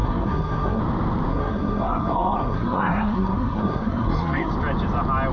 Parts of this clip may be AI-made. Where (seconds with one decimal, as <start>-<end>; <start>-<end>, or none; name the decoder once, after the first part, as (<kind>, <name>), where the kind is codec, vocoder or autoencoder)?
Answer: 0.0-0.8 (codec, SNAC); 1.3-4.5